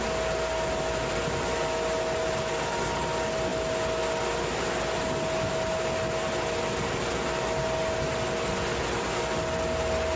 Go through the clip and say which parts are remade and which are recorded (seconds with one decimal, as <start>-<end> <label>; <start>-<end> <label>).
0.0-10.2 recorded